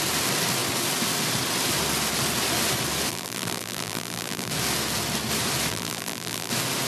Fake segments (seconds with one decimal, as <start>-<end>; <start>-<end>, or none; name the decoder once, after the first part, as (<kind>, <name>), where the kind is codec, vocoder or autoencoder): 3.1-4.5 (vocoder, BigVGAN v2); 5.7-6.5